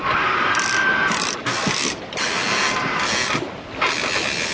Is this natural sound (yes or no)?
yes